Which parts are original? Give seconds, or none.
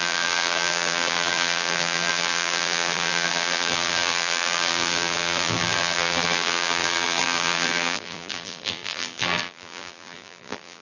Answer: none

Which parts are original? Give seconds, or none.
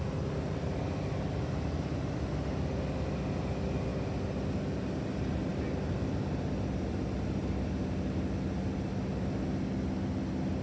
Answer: 0.0-10.6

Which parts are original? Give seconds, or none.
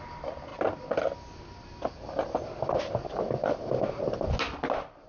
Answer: 0.0-5.1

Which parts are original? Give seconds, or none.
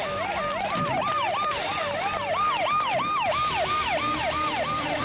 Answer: 0.0-5.0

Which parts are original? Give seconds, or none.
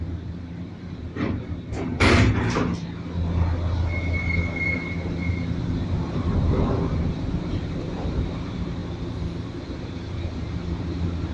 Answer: 2.7-7.1; 8.8-9.8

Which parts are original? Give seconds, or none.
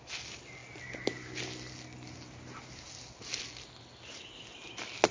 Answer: 0.0-5.1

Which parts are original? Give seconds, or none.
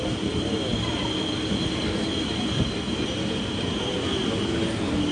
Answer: 0.0-0.7; 3.8-5.1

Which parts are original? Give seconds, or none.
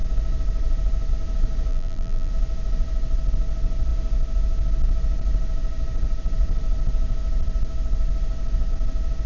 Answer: 0.0-1.7; 2.3-9.3